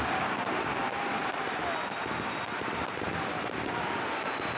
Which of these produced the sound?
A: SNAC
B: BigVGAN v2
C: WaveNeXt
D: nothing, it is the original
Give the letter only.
D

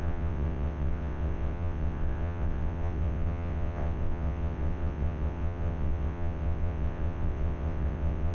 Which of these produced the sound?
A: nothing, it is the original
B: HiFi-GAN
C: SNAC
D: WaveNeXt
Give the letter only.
D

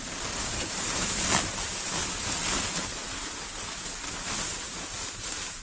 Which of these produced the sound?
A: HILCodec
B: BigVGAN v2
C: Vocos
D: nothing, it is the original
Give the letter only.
D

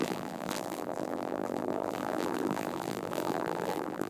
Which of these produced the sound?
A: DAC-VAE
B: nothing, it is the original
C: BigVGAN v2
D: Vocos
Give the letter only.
C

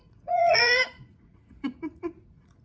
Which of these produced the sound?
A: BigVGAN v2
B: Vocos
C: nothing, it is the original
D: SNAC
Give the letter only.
B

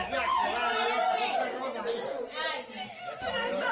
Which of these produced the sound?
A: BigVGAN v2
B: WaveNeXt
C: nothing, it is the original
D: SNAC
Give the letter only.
C